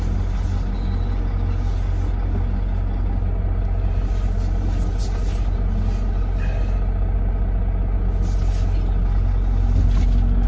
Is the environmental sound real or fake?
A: real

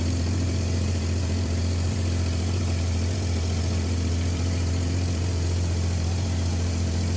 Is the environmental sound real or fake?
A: fake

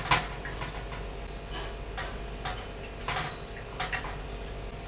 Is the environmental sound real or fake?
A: real